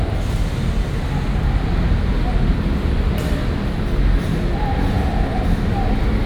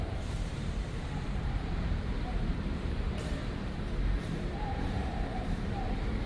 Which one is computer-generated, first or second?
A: second